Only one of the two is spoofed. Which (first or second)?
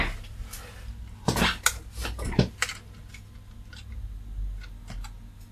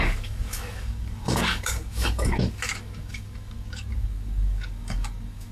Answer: second